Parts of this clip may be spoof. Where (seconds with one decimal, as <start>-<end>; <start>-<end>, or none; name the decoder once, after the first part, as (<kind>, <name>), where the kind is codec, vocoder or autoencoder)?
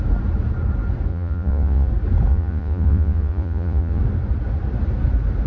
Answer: 1.1-1.9 (vocoder, Vocos); 2.3-4.0